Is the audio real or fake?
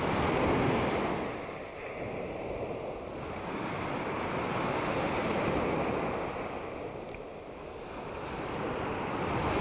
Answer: real